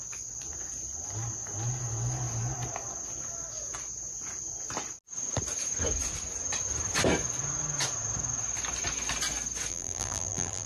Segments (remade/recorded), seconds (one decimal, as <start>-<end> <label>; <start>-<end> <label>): 0.0-9.7 recorded; 9.7-10.7 remade